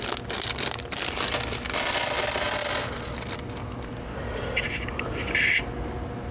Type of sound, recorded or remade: recorded